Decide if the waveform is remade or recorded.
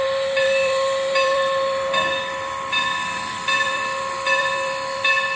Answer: remade